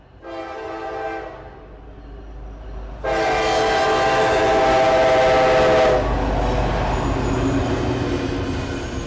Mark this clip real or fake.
real